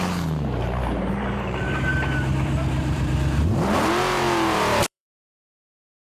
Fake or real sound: fake